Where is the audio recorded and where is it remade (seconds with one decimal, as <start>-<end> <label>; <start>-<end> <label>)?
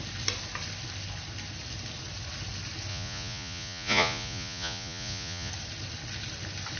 0.0-2.9 recorded; 2.9-5.5 remade; 5.5-6.8 recorded